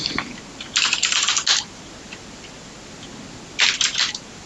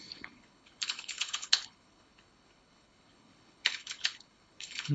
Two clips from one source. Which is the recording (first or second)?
first